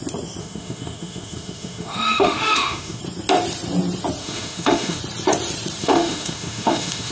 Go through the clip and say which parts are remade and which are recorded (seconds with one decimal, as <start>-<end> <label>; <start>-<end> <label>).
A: 0.0-0.4 recorded; 0.4-3.0 remade; 3.0-4.2 recorded; 4.2-5.0 remade; 5.0-5.8 recorded; 5.8-7.1 remade

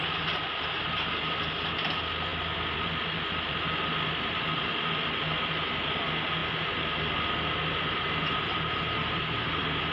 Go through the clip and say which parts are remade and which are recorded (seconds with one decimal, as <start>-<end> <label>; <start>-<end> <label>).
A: 0.0-2.3 recorded; 2.3-5.5 remade; 5.5-9.9 recorded

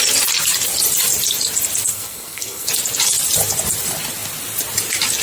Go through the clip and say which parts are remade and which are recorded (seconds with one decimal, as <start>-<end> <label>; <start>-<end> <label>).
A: 0.0-1.9 recorded; 1.9-2.7 remade; 2.7-5.2 recorded

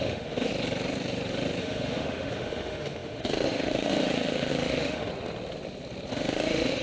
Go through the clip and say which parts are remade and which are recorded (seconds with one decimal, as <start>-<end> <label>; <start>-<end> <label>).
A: 0.0-0.5 remade; 0.5-1.6 recorded; 1.6-5.1 remade; 5.1-6.1 recorded; 6.1-6.8 remade